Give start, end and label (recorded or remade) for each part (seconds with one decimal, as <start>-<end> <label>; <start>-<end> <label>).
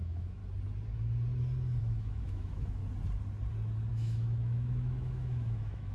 0.0-0.4 remade; 0.4-1.8 recorded; 1.8-2.8 remade; 2.8-3.9 recorded; 3.9-5.9 remade